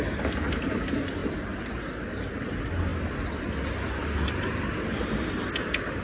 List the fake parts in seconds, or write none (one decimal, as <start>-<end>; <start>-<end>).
none